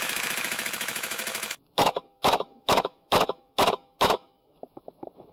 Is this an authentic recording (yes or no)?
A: no